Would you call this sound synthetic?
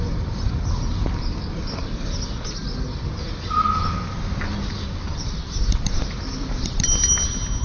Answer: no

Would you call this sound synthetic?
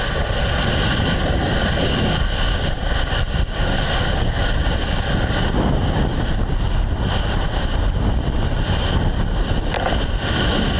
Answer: no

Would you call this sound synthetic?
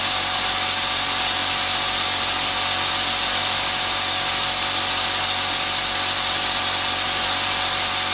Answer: no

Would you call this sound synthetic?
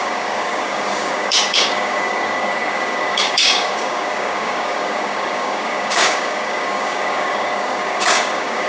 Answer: yes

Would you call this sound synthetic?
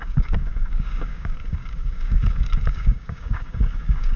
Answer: yes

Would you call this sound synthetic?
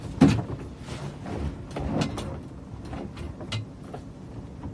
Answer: no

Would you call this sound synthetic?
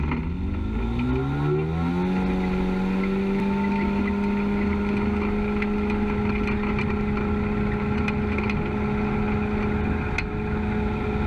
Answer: no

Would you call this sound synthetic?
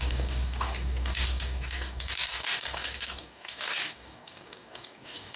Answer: yes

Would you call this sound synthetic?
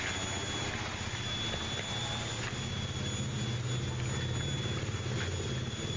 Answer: no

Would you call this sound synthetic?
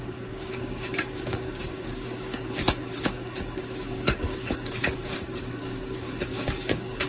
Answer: yes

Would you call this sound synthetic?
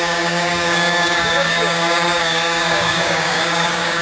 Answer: yes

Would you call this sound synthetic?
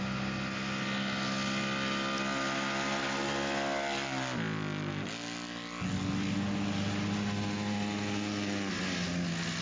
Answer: no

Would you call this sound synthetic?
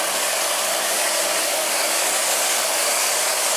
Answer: yes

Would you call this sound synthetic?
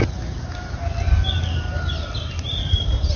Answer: no